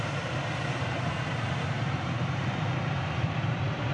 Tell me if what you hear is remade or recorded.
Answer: remade